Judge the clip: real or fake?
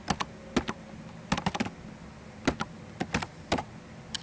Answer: real